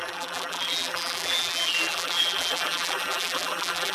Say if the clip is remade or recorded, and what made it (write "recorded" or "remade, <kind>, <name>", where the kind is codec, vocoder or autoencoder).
remade, vocoder, BigVGAN v2